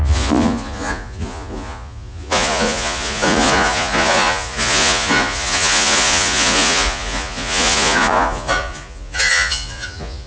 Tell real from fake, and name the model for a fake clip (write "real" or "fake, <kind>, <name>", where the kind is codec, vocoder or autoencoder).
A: fake, vocoder, Vocos